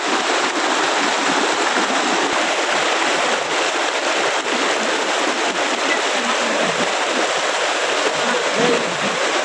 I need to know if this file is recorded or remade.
recorded